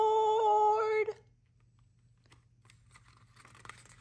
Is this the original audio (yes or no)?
yes